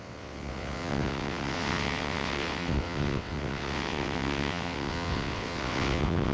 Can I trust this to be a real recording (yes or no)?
no